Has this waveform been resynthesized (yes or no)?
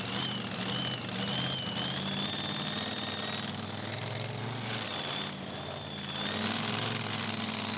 no